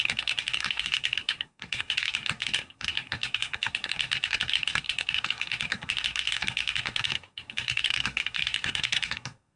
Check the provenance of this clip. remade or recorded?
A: remade